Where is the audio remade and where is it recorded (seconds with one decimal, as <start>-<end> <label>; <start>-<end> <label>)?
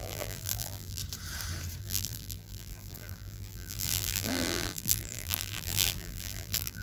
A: 0.0-1.0 remade; 1.0-1.8 recorded; 1.8-6.8 remade